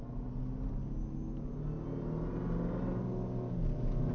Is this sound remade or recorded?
recorded